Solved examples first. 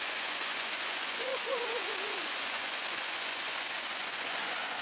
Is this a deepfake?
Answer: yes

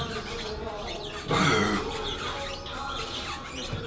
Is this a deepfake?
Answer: no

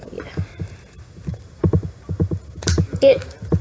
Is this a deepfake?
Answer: no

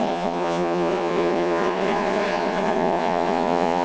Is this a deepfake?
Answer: yes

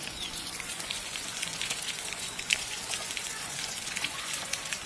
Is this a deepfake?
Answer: yes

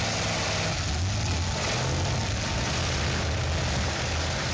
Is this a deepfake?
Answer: no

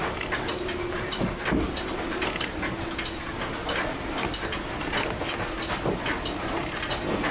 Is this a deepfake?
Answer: no